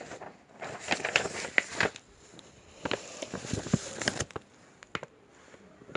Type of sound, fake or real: real